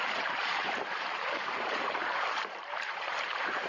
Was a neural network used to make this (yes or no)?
yes